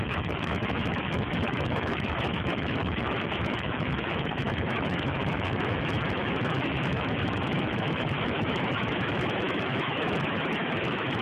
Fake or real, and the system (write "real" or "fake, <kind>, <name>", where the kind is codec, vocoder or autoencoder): fake, autoencoder, DAC-VAE